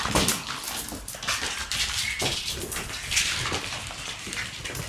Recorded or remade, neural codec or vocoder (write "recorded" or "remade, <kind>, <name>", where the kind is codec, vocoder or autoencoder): recorded